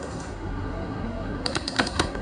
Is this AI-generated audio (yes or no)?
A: yes